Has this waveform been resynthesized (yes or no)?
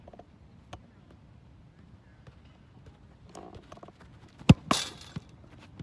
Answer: no